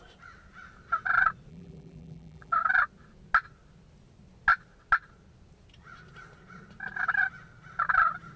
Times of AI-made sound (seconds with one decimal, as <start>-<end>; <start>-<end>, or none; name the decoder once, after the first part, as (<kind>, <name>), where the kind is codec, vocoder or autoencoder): 1.5-2.6 (vocoder, BigVGAN v2)